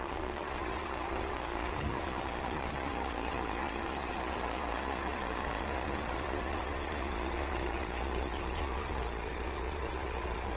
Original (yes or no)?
no